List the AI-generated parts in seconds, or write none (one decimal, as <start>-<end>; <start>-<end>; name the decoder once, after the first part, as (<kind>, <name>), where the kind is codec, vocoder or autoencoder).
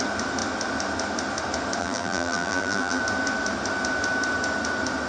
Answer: 1.8-3.0 (vocoder, BigVGAN v2)